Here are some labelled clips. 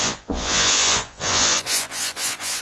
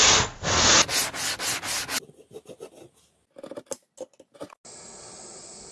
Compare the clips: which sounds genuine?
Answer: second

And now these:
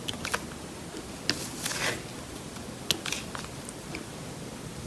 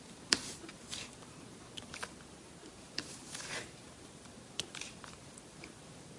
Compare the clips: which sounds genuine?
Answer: first